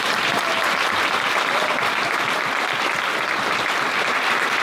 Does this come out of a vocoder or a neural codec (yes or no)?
no